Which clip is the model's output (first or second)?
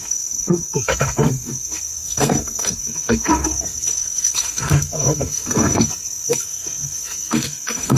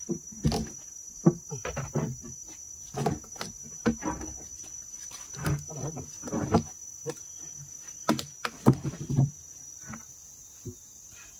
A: first